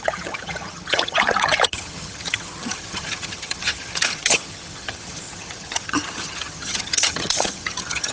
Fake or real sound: fake